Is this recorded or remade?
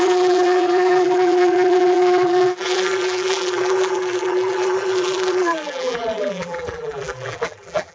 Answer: remade